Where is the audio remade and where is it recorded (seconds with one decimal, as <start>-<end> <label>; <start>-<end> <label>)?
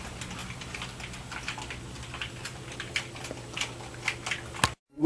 0.0-5.1 recorded